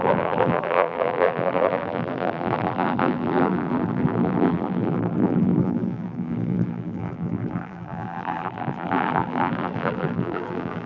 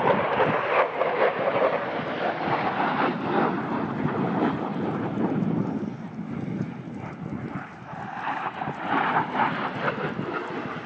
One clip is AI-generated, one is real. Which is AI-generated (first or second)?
first